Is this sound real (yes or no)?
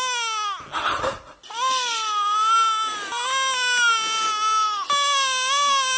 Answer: yes